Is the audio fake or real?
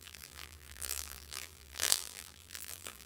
fake